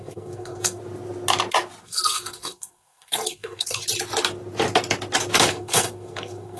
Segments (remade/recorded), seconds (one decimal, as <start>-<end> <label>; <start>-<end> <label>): 0.0-0.8 remade; 0.8-1.8 recorded; 1.8-3.8 remade; 3.8-5.5 recorded; 5.5-6.6 remade